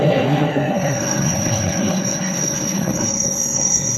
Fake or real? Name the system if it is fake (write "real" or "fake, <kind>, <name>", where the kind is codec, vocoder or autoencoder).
fake, codec, SNAC